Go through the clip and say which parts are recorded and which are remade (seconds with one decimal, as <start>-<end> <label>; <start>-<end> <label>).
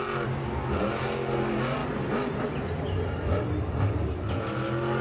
0.0-5.0 recorded